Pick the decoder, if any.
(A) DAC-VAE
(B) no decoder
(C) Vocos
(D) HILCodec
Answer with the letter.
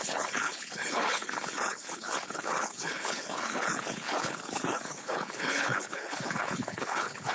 D